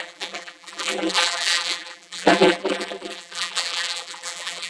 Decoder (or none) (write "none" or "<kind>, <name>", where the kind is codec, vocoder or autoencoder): vocoder, BigVGAN v2